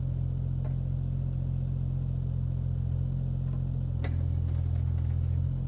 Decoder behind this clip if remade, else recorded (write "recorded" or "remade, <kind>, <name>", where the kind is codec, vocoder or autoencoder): recorded